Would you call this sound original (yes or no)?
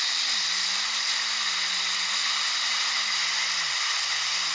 yes